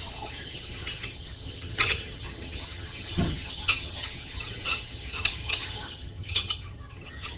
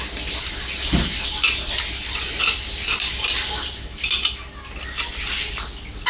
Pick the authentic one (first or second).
second